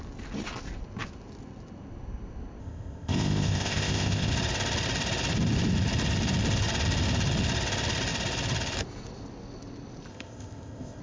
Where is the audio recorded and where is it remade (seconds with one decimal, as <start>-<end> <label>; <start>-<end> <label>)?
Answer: 0.0-2.6 recorded; 2.6-4.3 remade; 4.3-10.1 recorded; 10.1-11.0 remade